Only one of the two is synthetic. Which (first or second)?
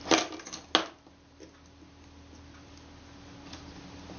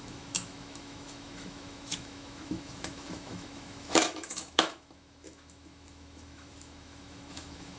second